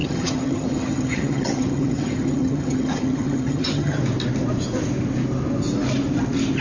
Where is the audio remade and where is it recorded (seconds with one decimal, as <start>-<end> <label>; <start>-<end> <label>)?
0.0-4.0 remade; 4.0-6.6 recorded